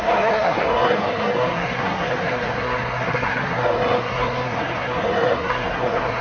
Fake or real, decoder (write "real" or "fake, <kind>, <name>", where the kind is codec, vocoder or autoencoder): fake, codec, SNAC